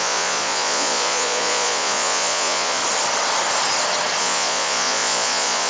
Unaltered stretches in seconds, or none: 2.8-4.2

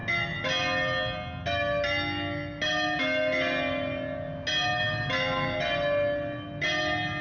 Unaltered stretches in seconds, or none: 0.0-7.2